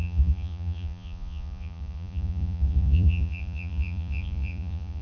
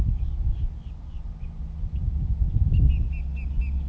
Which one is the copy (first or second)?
first